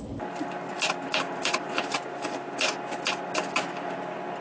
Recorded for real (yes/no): yes